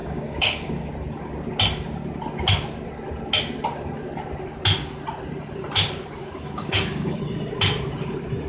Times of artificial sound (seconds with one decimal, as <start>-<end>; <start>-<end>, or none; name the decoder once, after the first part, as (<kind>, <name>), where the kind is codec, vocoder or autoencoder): 0.0-0.9 (codec, DAC); 6.2-7.2